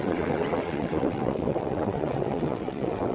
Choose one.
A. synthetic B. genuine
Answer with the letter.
A